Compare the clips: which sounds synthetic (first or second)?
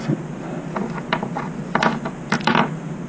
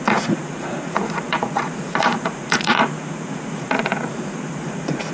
second